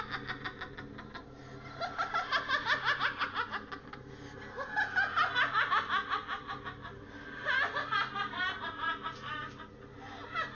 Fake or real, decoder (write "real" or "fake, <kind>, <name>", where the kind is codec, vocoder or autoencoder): real